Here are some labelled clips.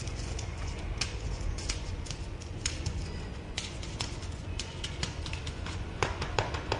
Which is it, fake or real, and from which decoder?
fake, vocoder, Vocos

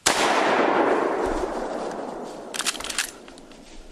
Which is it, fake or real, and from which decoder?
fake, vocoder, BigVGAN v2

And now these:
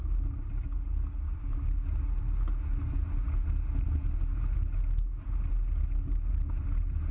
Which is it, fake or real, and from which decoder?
real